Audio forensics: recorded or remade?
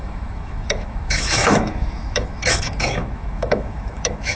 remade